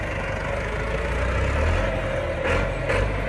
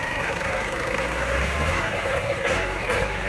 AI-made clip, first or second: second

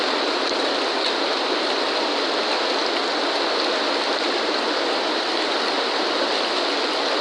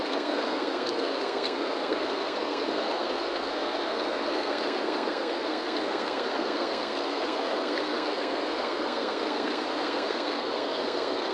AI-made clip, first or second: second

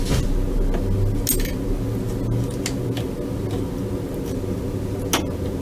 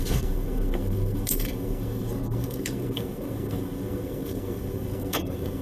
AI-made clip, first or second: second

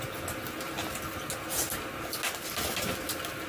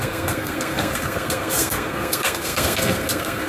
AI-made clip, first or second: second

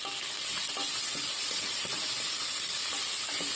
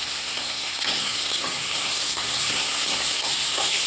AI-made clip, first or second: second